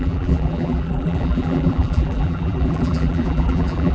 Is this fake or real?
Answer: fake